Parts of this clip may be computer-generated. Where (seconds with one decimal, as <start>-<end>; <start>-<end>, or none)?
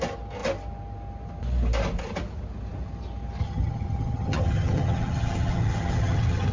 3.4-6.5